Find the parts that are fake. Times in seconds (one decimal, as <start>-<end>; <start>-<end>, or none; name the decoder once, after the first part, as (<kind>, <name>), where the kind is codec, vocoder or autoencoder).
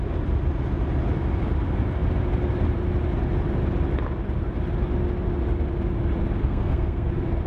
6.4-7.1 (codec, SNAC)